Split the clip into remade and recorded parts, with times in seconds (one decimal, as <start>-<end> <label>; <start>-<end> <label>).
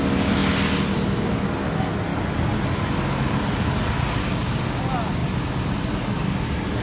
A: 0.0-4.2 recorded; 4.2-4.8 remade; 4.8-6.8 recorded